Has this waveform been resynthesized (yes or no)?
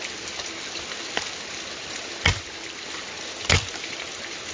no